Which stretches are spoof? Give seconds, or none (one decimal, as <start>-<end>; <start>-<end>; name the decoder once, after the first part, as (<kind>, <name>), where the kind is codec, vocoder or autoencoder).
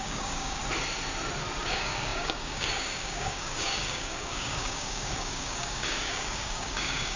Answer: 0.0-0.6 (codec, DAC); 1.6-7.2